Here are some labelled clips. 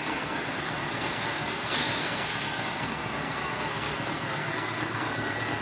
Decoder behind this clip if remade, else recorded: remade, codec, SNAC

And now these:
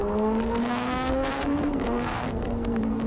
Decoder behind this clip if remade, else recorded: remade, codec, SNAC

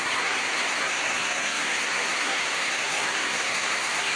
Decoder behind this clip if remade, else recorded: remade, codec, SNAC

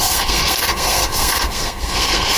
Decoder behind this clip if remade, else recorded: remade, codec, SNAC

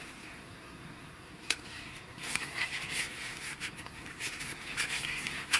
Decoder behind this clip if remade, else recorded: remade, codec, SNAC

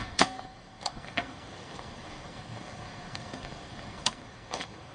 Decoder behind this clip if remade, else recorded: remade, codec, SNAC